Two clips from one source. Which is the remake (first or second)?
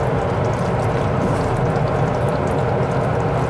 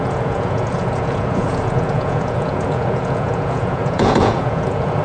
second